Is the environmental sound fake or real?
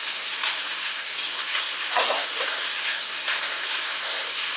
fake